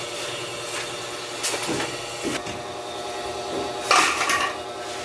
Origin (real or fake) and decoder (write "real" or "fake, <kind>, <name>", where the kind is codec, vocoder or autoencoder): real